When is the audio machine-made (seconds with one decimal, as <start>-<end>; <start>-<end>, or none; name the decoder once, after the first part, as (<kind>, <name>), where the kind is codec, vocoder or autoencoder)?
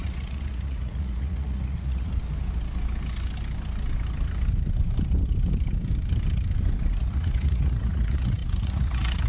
0.0-2.1 (vocoder, Vocos); 7.1-9.3